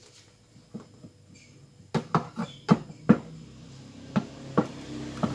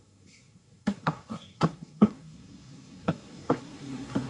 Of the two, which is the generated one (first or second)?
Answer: second